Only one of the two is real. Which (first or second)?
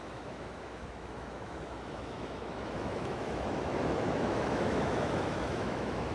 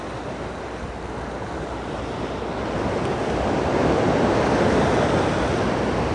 second